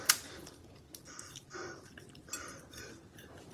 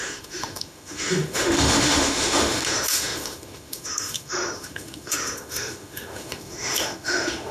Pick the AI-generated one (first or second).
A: second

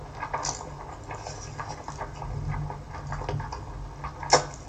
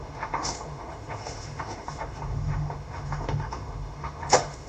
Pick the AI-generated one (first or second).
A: second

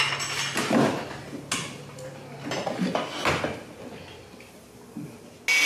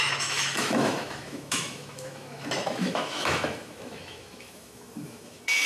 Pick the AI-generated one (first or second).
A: second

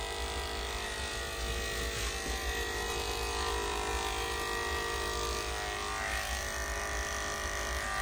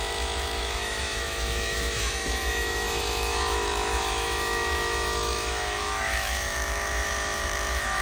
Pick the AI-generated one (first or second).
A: second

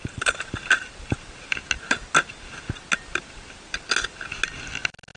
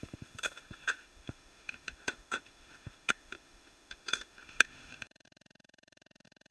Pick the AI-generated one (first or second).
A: second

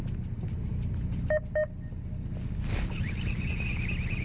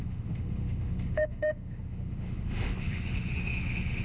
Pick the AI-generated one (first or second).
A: second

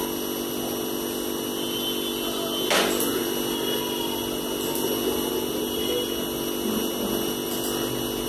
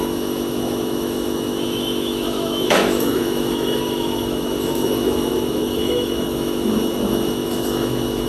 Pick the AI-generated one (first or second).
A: second